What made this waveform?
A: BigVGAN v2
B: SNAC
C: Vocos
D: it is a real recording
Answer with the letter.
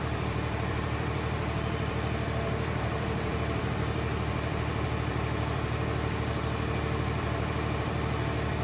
A